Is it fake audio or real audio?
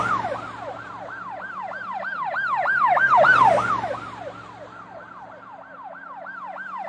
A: real